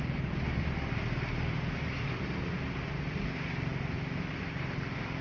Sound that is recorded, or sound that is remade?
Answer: recorded